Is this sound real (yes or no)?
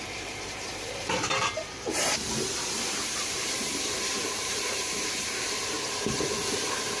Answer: no